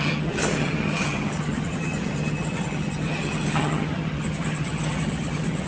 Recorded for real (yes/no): no